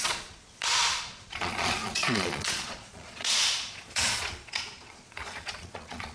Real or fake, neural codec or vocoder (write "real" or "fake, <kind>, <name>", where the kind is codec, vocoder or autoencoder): fake, vocoder, Vocos